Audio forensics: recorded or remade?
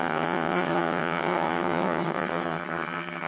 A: remade